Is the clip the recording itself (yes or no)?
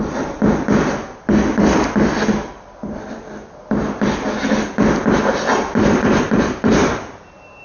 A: yes